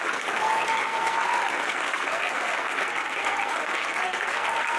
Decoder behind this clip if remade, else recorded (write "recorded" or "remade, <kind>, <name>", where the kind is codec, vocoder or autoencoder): remade, codec, SNAC